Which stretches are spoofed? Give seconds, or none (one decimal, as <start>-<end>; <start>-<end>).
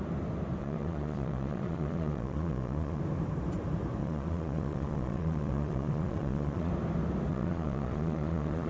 0.6-3.0; 4.0-6.7; 7.3-8.7